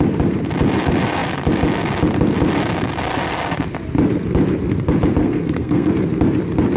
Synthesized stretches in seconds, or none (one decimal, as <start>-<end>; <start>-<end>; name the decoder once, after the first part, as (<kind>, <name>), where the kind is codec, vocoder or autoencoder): 5.2-5.9 (codec, SNAC)